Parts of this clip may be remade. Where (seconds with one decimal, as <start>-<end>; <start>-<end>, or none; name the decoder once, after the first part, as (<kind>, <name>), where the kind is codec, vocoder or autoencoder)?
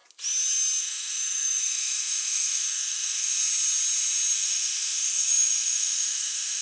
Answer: 0.8-3.4 (autoencoder, DAC-VAE); 4.3-6.6